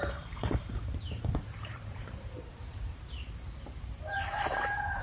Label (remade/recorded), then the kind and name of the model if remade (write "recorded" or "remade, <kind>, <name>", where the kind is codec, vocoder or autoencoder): remade, vocoder, BigVGAN v2